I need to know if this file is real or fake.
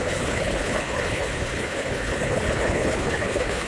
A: fake